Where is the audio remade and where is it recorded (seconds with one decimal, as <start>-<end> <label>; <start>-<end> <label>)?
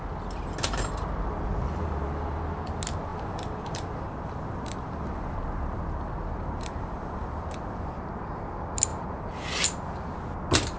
0.0-3.1 recorded; 3.1-8.1 remade; 8.1-8.9 recorded; 8.9-9.5 remade; 9.5-10.8 recorded